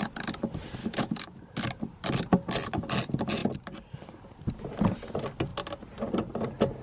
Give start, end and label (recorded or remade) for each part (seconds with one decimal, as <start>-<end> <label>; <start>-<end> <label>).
0.0-0.8 recorded; 0.8-1.4 remade; 1.4-6.8 recorded